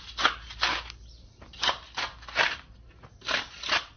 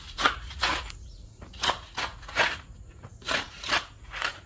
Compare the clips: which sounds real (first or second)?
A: first